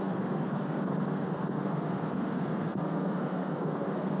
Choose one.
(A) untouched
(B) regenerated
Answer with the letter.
B